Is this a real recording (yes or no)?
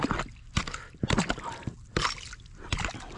yes